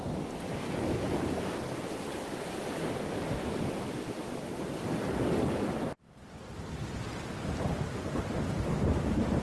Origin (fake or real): real